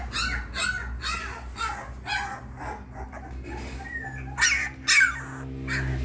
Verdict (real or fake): real